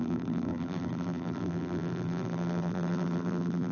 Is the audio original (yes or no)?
no